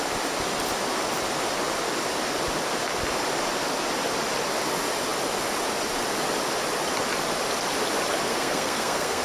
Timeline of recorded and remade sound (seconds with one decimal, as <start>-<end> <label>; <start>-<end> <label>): 0.0-8.3 recorded; 8.3-9.2 remade